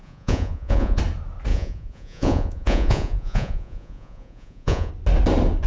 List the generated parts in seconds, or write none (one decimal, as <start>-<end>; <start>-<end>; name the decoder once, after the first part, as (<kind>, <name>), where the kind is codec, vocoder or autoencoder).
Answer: 0.0-1.0 (vocoder, Vocos); 1.5-4.9